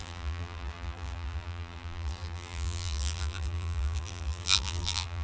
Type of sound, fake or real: fake